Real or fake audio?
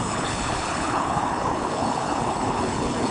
fake